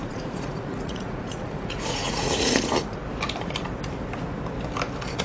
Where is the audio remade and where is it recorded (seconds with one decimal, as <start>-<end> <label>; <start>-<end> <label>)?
0.0-3.0 remade; 3.0-5.2 recorded